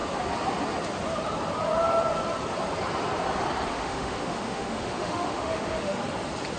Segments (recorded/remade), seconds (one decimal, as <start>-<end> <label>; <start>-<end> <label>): 0.0-3.7 recorded; 3.7-6.0 remade; 6.0-6.6 recorded